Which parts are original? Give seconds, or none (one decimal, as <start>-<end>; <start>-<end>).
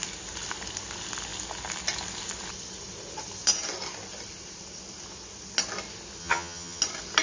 0.0-6.2; 6.8-7.2